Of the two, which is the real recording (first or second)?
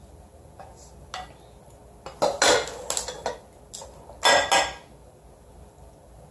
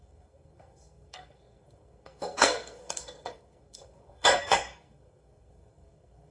first